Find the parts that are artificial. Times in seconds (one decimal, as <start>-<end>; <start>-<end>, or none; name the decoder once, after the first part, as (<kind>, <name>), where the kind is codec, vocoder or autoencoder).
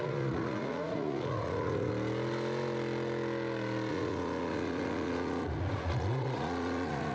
0.0-1.9 (vocoder, Vocos); 3.9-7.1